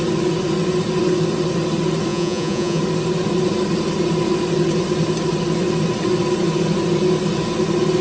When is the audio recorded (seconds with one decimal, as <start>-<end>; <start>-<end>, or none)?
0.0-2.1; 2.8-8.0